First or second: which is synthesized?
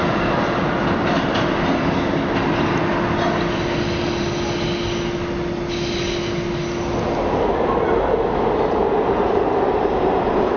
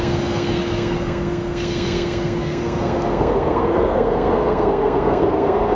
second